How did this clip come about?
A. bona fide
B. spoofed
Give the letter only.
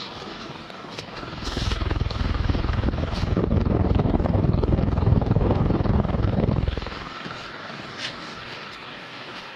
B